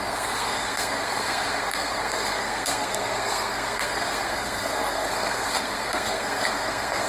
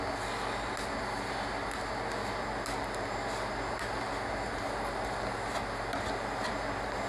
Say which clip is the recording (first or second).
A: second